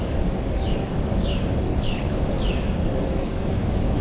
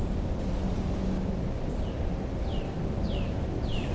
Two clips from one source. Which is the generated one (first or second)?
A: first